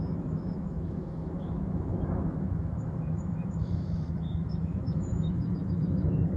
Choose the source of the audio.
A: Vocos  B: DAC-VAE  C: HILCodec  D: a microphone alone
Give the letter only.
B